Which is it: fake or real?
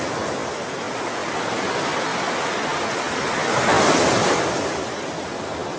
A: real